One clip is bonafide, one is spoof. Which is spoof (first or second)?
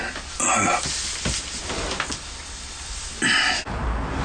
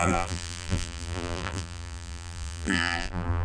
second